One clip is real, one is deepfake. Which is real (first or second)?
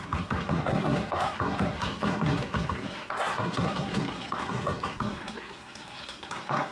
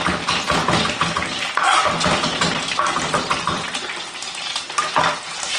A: second